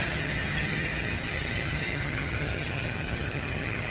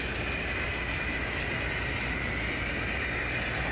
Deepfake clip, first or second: first